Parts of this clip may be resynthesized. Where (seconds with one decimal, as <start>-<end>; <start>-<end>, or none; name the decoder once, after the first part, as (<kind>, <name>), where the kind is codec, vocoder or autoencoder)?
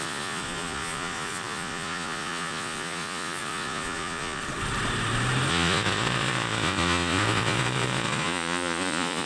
0.0-4.4 (vocoder, Vocos); 5.5-9.3